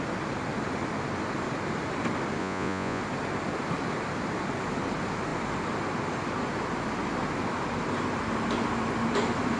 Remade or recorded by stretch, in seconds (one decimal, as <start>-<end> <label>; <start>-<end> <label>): 0.0-2.4 recorded; 2.4-3.0 remade; 3.0-9.6 recorded